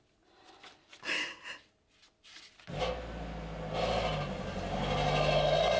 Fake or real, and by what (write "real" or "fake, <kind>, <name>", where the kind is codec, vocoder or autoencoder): real